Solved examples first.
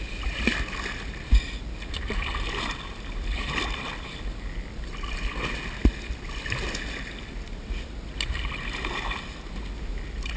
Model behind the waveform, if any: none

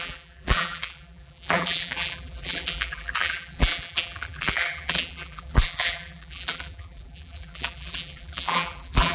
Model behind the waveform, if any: vocoder, BigVGAN v2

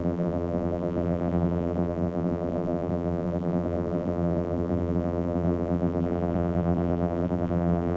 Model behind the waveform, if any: vocoder, BigVGAN v2